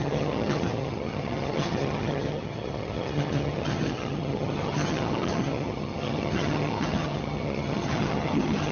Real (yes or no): no